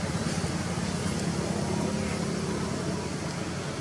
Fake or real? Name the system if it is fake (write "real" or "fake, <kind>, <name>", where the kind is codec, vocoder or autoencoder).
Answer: real